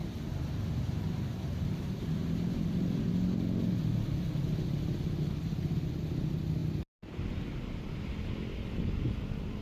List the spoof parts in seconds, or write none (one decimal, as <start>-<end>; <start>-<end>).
0.0-3.1